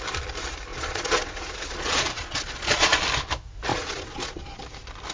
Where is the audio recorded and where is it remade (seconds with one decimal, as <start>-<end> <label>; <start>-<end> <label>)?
0.0-0.7 recorded; 0.7-3.0 remade; 3.0-3.7 recorded; 3.7-4.6 remade; 4.6-5.1 recorded